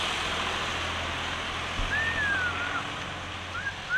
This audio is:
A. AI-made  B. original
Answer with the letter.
B